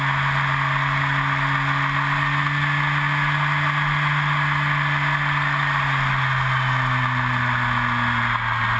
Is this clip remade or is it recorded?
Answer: recorded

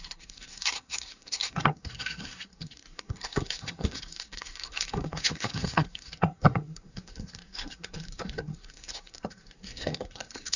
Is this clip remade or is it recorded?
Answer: remade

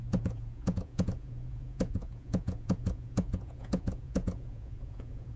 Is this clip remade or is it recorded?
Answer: remade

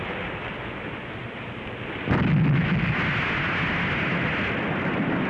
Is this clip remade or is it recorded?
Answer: recorded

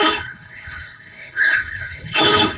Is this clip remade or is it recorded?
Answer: remade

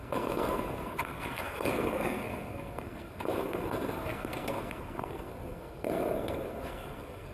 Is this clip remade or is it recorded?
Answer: remade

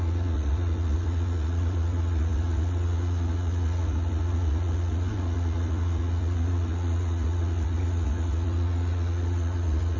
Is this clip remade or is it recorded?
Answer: remade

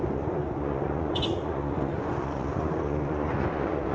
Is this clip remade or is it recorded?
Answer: remade